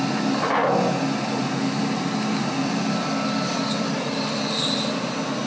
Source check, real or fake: real